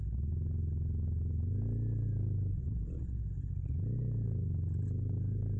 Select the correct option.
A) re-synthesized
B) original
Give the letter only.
B